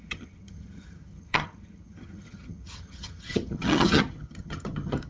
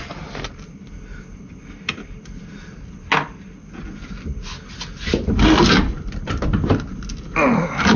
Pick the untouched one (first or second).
second